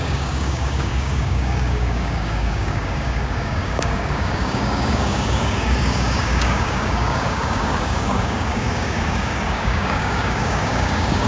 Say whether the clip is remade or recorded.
remade